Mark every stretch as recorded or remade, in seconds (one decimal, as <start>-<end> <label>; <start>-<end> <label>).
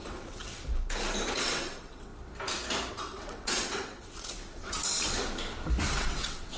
0.0-0.5 remade; 0.5-1.3 recorded; 1.3-2.1 remade; 2.1-2.9 recorded; 2.9-4.8 remade; 4.8-5.9 recorded; 5.9-6.6 remade